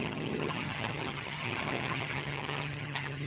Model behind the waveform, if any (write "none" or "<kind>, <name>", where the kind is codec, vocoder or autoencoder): vocoder, HiFi-GAN